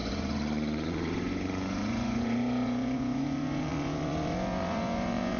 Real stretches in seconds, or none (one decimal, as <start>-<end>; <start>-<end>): none